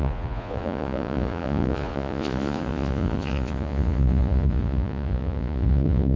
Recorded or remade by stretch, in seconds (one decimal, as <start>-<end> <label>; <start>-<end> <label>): 0.0-6.2 remade